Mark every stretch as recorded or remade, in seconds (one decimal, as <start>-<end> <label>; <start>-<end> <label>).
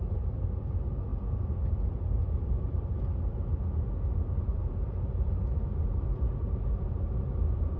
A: 0.0-4.6 recorded; 4.6-5.8 remade; 5.8-7.8 recorded